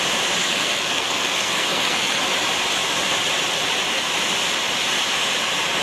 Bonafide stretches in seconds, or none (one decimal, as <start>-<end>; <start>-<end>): 0.0-0.4; 2.2-5.8